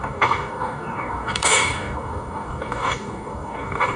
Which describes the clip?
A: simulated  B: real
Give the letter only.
A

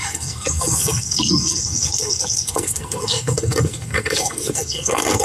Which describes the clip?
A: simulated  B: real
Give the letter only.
A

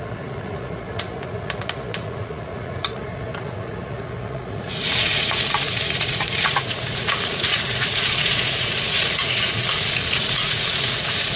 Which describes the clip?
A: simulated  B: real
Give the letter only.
A